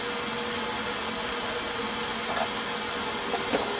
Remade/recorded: recorded